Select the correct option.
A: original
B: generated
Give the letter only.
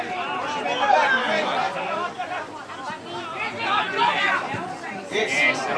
A